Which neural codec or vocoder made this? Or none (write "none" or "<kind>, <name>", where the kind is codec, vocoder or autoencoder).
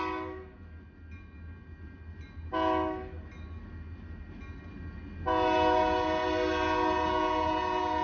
none